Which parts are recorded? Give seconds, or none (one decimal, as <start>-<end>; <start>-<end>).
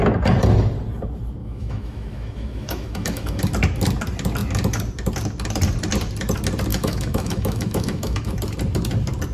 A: 0.0-1.4; 3.4-6.7; 8.3-9.3